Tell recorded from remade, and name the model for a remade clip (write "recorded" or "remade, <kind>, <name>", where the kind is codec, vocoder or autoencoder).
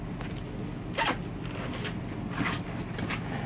recorded